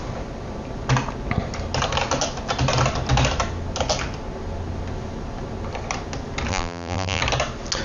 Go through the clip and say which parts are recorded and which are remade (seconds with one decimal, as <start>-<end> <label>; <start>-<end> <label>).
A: 0.0-6.5 recorded; 6.5-7.2 remade; 7.2-7.8 recorded